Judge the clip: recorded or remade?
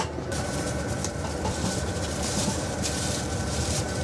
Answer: remade